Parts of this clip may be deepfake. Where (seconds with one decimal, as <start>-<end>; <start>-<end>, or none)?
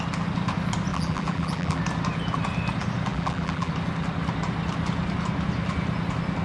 0.9-1.8; 3.1-3.7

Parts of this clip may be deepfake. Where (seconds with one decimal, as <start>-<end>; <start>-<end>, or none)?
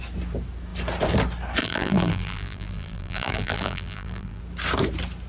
1.6-4.4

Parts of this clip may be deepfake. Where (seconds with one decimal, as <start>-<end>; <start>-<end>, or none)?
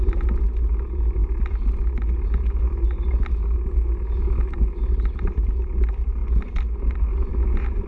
none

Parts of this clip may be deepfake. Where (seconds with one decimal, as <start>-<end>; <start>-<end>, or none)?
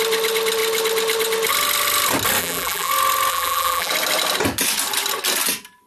2.4-2.9; 3.3-3.9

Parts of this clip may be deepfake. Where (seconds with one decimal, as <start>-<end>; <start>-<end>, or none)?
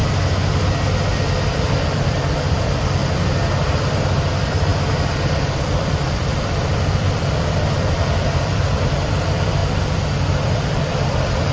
1.5-3.0; 4.3-4.7; 5.4-11.5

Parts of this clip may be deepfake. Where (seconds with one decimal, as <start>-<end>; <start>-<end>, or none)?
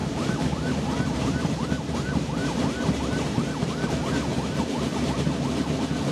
0.0-3.7; 4.3-5.4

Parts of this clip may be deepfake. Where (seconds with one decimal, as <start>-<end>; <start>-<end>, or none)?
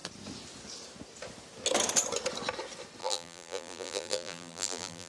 3.0-5.1